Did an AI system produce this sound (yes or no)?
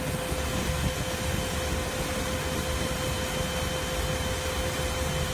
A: no